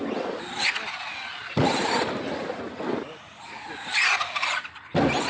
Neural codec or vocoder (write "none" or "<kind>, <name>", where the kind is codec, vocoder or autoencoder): none